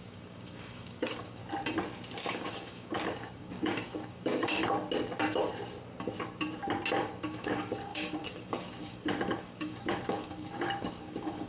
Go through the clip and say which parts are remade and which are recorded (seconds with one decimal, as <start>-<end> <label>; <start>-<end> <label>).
0.0-1.4 remade; 1.4-2.3 recorded; 2.3-4.6 remade; 4.6-7.0 recorded; 7.0-11.5 remade